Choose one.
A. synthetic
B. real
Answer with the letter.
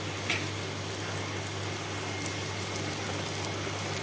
B